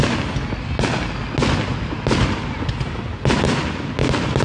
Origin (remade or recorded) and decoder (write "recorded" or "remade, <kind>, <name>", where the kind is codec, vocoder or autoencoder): recorded